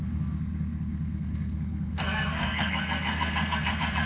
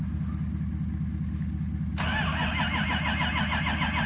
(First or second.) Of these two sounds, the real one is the second